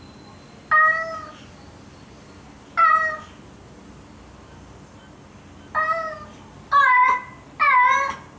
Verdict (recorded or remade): recorded